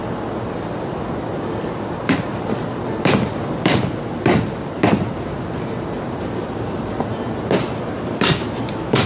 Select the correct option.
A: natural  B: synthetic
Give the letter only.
A